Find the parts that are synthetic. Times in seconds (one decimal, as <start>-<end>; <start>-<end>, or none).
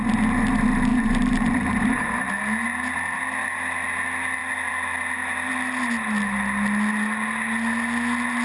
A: 0.9-2.3